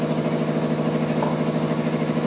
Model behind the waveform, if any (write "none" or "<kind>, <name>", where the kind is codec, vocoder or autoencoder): none